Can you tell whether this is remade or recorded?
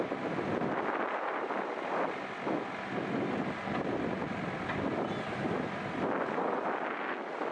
recorded